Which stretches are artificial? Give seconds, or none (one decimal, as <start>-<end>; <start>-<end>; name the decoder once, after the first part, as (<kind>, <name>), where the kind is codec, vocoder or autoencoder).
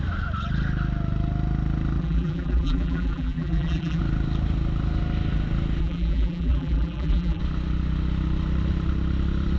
2.0-4.0 (vocoder, BigVGAN v2); 5.8-7.4